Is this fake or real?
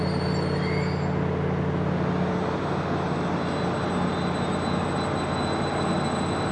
real